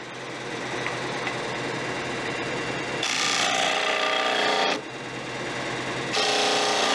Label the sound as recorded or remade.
recorded